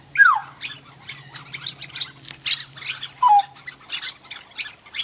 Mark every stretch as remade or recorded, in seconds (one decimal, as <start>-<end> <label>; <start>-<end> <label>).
0.0-5.0 recorded